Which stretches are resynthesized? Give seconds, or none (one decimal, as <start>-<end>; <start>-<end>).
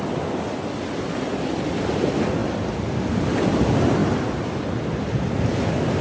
none